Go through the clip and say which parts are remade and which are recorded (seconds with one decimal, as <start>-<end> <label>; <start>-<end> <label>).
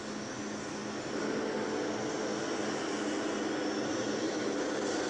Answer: 0.0-5.1 recorded